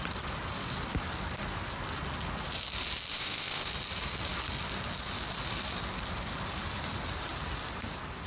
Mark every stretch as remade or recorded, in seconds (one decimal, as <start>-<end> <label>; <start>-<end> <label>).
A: 0.0-3.1 recorded; 3.1-3.7 remade; 3.7-8.3 recorded